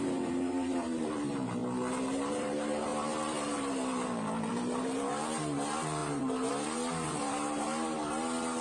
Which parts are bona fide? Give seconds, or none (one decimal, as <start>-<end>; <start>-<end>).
1.6-2.3